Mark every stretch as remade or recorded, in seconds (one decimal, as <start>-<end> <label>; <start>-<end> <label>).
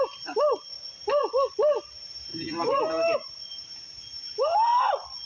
0.0-1.2 remade; 1.2-1.8 recorded; 1.8-4.7 remade; 4.7-5.3 recorded